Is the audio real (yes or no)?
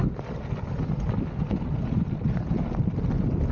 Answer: yes